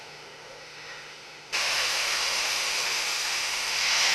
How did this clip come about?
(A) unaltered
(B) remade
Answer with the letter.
B